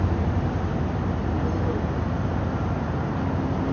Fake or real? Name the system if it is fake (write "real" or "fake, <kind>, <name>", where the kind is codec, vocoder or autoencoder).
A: real